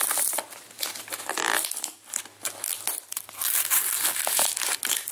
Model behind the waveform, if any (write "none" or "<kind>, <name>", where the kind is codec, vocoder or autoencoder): none